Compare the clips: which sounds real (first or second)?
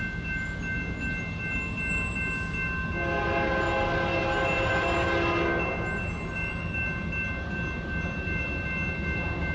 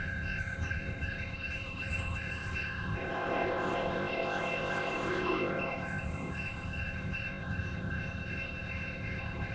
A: first